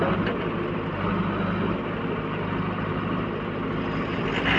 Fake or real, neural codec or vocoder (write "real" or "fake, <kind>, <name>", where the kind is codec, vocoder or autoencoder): real